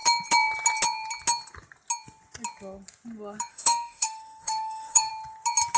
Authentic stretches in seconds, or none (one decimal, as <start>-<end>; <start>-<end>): 0.0-3.5; 5.1-5.8